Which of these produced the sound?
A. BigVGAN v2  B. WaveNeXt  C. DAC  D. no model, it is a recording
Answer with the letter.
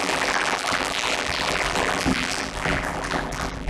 A